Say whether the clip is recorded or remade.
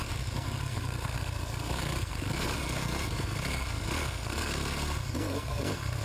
remade